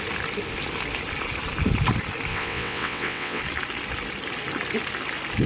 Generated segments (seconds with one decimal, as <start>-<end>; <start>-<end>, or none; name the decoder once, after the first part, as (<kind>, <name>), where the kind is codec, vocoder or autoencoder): 2.3-3.4 (vocoder, WaveNeXt)